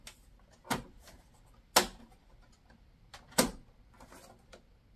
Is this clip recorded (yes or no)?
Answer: yes